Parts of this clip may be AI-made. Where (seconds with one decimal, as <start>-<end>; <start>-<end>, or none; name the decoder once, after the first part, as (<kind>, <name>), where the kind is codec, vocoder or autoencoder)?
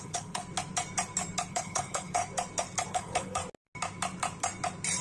0.0-0.4 (codec, HILCodec); 1.5-2.2; 2.9-3.4